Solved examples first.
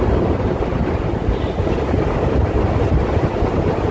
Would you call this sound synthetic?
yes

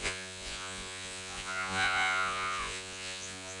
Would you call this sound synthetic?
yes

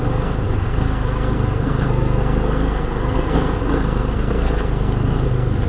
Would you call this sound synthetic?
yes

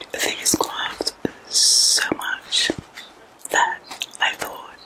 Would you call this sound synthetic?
no